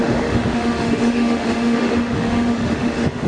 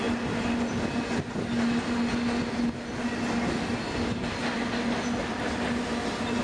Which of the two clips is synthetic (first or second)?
first